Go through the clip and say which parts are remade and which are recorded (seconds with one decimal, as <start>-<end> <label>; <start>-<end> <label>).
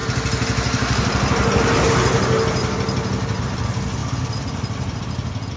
0.0-4.0 recorded; 4.0-5.0 remade; 5.0-5.6 recorded